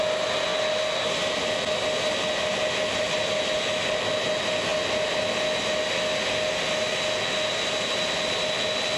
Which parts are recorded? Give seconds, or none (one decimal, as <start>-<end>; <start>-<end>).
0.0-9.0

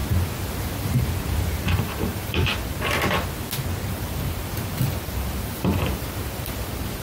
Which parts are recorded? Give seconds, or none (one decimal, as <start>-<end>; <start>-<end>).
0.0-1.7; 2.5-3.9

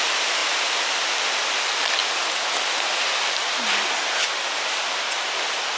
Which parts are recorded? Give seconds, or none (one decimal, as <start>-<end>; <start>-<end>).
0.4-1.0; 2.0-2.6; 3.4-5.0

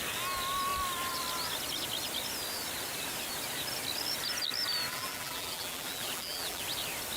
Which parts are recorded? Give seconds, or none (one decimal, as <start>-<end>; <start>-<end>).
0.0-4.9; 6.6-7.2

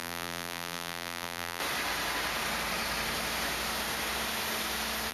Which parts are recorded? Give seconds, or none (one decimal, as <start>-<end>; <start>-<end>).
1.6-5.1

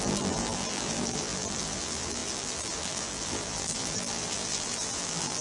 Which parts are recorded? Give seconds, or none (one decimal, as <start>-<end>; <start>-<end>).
none

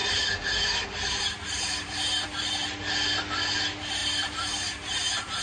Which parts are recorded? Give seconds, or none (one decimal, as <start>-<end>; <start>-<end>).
2.0-4.0

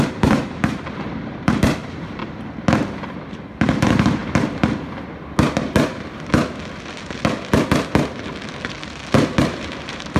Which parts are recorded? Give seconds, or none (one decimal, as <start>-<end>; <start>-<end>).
2.2-3.3; 4.2-9.4